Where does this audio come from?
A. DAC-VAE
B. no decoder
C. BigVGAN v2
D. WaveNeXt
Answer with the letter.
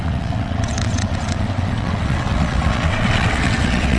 D